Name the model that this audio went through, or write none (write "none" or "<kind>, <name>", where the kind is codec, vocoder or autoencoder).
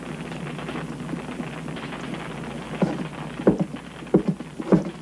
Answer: none